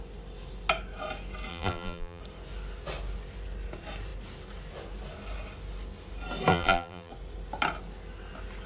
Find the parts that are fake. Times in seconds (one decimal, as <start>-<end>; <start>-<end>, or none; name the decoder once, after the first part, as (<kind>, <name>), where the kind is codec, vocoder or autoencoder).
1.5-2.2 (vocoder, BigVGAN v2); 6.5-7.1